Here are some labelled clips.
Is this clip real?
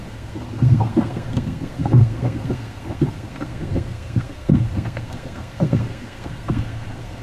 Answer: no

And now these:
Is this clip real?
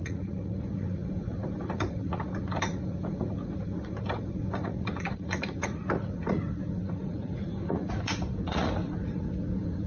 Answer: no